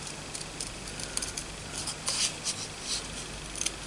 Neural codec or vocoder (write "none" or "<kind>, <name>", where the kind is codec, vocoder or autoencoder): none